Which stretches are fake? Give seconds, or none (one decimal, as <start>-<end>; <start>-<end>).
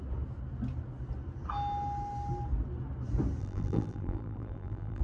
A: 3.4-5.0